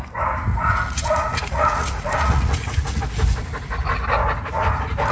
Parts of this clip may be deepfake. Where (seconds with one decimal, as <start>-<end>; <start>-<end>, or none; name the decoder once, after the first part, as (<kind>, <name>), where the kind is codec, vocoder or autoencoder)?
0.5-3.0 (vocoder, Vocos)